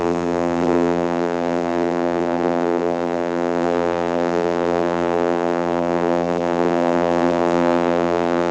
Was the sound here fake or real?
fake